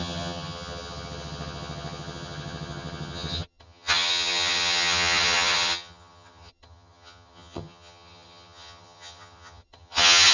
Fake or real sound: fake